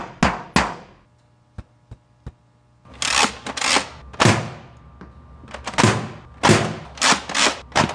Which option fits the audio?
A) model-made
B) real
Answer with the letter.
B